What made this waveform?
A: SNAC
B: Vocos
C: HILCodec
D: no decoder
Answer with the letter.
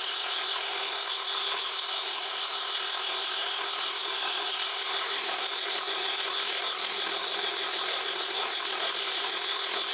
A